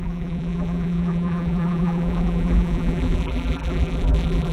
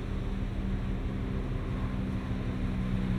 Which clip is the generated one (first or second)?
first